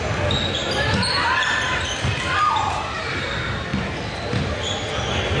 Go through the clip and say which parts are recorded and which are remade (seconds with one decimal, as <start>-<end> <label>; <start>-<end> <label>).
0.0-5.4 recorded